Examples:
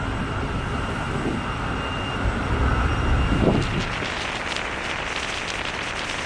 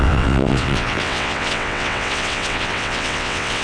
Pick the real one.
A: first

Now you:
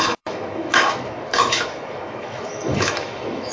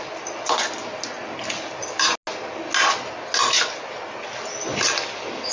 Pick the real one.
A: second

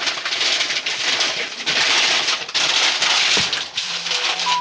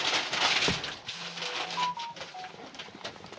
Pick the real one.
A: second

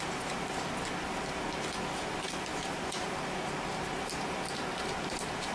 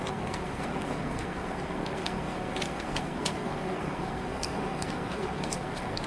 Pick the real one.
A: first